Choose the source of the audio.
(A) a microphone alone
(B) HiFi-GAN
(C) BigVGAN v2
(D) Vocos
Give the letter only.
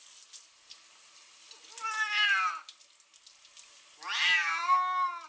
A